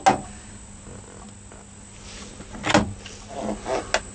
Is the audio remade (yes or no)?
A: no